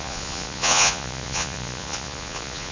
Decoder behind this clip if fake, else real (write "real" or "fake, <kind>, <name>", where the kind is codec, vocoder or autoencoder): fake, vocoder, Vocos